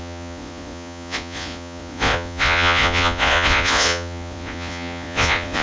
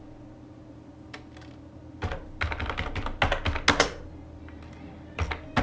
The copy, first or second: first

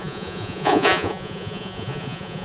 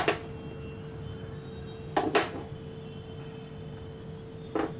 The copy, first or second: first